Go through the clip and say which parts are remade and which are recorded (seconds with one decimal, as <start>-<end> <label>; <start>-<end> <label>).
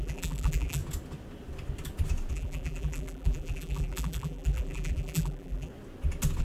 0.0-0.8 remade; 0.8-2.3 recorded; 2.3-5.7 remade; 5.7-6.4 recorded